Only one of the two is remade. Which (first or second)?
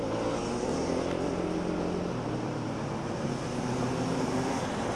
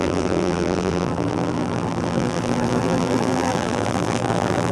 second